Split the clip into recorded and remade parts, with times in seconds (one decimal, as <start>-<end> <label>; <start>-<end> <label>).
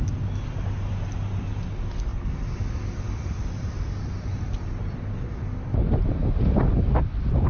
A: 0.0-7.5 recorded